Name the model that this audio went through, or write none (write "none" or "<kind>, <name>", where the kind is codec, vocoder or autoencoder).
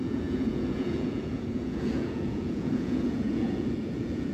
vocoder, Vocos